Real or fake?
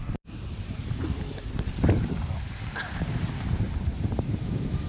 fake